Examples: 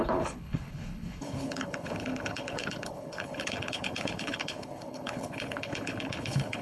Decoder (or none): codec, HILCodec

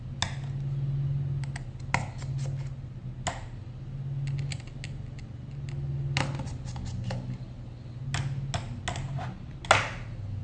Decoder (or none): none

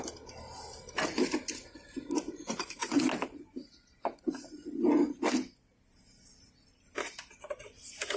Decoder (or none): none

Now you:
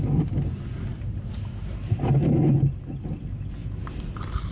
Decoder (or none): none